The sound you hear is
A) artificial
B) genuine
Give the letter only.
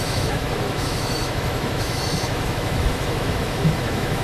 A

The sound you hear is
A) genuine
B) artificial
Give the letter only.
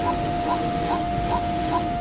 B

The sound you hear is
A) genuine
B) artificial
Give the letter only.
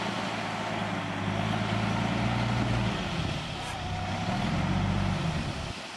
A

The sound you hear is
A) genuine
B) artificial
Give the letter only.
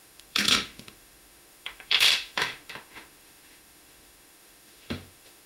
B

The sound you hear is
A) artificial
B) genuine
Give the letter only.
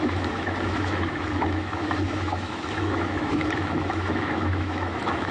A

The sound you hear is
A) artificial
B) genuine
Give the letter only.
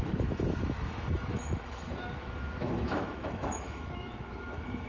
A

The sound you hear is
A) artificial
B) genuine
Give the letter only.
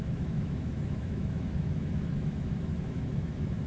A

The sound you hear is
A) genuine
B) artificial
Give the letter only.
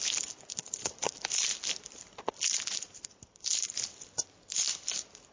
A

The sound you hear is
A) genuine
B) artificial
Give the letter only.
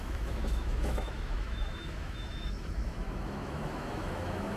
B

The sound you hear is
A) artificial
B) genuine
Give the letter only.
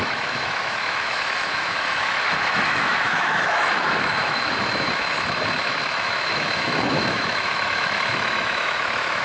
A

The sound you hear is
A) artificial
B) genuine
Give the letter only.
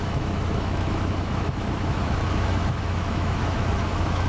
A